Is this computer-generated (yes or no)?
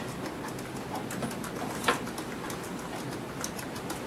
no